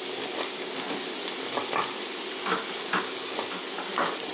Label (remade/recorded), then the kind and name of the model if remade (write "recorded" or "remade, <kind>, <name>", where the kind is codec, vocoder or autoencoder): recorded